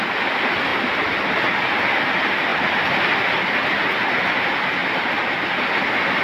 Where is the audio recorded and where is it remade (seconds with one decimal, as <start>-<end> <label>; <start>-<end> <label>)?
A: 0.0-2.5 recorded; 2.5-3.0 remade; 3.0-4.8 recorded; 4.8-5.3 remade; 5.3-6.2 recorded